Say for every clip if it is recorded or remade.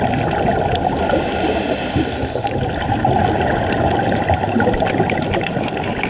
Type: recorded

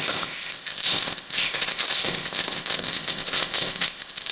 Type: remade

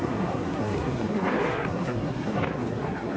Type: remade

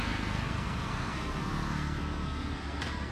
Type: remade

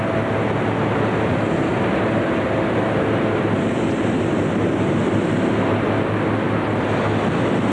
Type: recorded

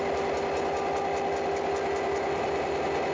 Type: recorded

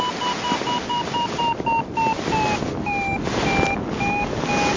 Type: recorded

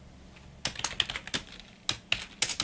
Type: recorded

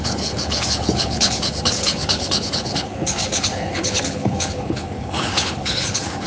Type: remade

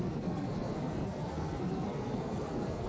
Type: remade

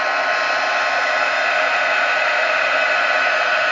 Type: recorded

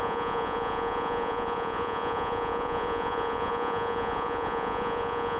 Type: remade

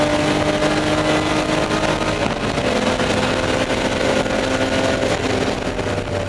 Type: recorded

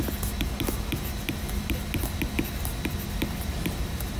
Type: recorded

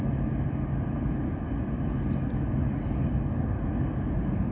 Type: recorded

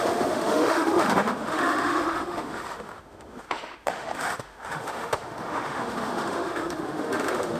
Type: remade